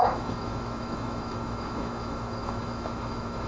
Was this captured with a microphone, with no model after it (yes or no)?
no